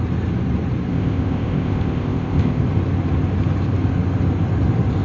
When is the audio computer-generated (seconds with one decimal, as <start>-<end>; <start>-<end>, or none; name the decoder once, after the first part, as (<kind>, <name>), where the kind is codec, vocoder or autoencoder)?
0.9-2.6 (codec, ZipCodec)